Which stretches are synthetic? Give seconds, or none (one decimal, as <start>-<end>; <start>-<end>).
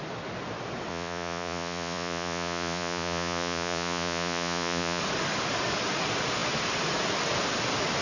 0.9-5.0